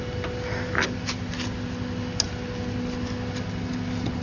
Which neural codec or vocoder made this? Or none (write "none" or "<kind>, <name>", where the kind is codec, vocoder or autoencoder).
none